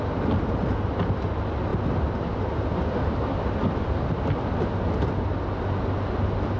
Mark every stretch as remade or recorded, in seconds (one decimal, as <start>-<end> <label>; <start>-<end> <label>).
0.0-6.6 recorded